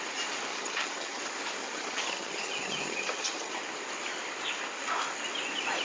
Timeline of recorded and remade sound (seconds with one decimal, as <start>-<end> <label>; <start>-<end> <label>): 0.0-0.5 recorded; 0.5-1.2 remade; 1.2-1.6 recorded; 1.6-3.6 remade; 3.6-5.8 recorded